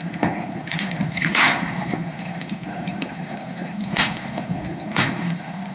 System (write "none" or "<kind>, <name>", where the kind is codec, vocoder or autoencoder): codec, SNAC